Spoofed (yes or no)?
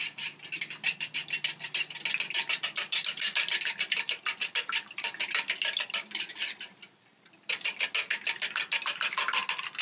no